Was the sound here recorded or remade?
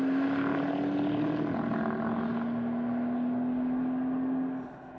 recorded